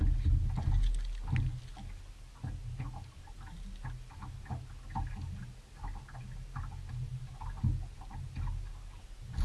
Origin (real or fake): real